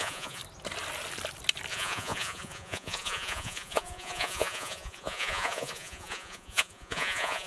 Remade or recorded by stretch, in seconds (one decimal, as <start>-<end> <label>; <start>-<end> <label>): 0.0-0.4 remade; 0.4-1.7 recorded; 1.7-7.5 remade